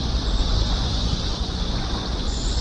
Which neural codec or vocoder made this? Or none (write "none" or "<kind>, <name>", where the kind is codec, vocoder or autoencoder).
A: vocoder, Vocos